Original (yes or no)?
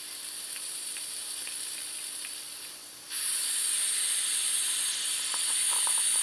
yes